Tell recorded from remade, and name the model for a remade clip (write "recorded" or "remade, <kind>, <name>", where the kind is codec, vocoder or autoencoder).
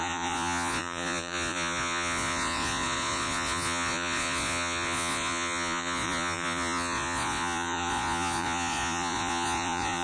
remade, vocoder, Vocos